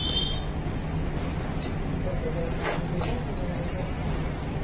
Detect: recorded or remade recorded